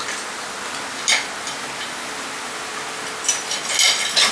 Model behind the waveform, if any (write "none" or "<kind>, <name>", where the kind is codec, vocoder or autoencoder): none